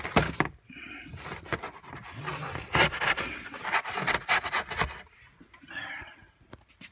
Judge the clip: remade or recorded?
recorded